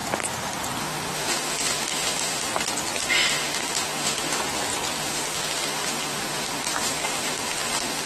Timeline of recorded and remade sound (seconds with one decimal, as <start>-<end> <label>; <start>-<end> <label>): 0.0-0.8 recorded; 0.8-2.5 remade; 2.5-3.1 recorded; 3.1-4.4 remade; 4.4-5.0 recorded; 5.0-8.1 remade

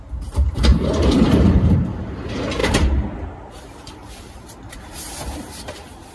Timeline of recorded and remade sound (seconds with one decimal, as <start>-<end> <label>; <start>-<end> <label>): 0.0-0.7 recorded; 0.7-1.9 remade; 1.9-2.6 recorded; 2.6-6.1 remade

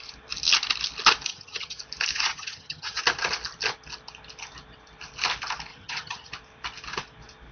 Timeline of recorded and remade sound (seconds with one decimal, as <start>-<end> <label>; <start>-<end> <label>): 0.0-1.3 recorded; 1.3-1.8 remade; 1.8-2.3 recorded; 2.3-3.0 remade; 3.0-5.7 recorded; 5.7-6.3 remade; 6.3-7.5 recorded

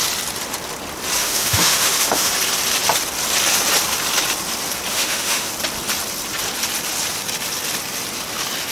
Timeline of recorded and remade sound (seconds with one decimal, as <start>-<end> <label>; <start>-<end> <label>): 0.0-1.2 recorded; 1.2-2.3 remade; 2.3-4.9 recorded; 4.9-5.5 remade; 5.5-8.7 recorded

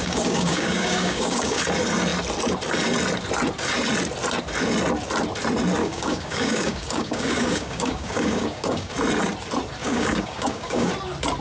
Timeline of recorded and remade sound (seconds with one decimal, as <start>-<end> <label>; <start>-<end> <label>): 0.0-1.6 remade; 1.6-5.8 recorded; 5.8-8.9 remade; 8.9-9.8 recorded; 9.8-10.9 remade; 10.9-11.4 recorded

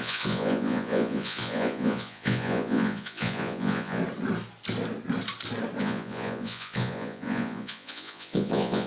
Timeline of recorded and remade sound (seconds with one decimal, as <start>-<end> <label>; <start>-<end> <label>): 0.0-4.0 remade; 4.0-5.8 recorded; 5.8-8.9 remade

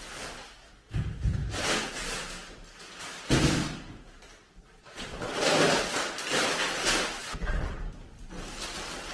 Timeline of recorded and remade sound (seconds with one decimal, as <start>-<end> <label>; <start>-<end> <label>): 0.0-4.8 recorded; 4.8-5.5 remade; 5.5-7.2 recorded; 7.2-7.8 remade; 7.8-9.1 recorded